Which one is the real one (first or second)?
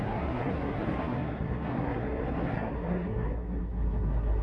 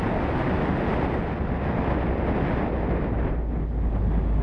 second